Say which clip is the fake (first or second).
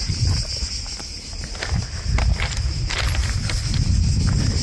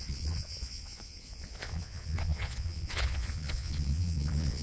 second